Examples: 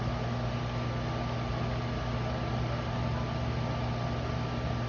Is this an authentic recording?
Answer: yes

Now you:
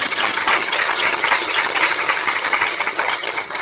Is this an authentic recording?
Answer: no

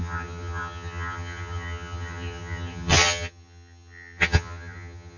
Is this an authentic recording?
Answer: no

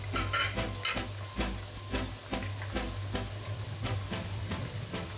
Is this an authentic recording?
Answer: yes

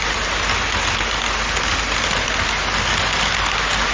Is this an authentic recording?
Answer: yes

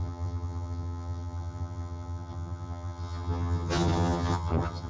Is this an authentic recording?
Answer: no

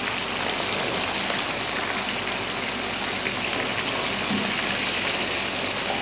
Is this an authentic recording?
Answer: yes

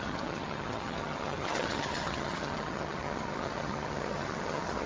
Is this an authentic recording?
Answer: no